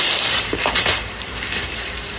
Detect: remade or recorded remade